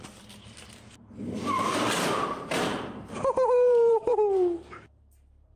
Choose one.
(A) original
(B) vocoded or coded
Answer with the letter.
B